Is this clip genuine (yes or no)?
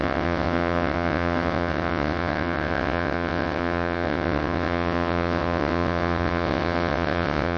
no